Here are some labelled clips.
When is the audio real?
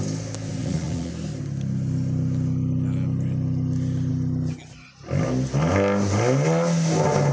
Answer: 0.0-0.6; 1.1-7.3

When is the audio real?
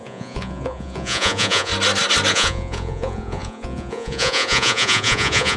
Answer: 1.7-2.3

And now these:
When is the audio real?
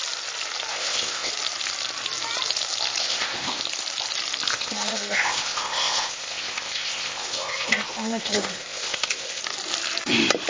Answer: 0.0-0.7; 1.3-3.0; 3.6-4.5; 9.4-10.5